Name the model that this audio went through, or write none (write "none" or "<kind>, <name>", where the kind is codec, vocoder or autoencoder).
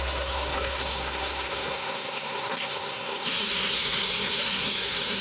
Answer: codec, SNAC